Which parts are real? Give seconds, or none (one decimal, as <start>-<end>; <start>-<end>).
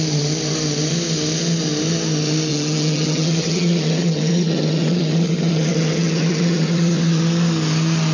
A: 0.0-2.5; 7.2-8.1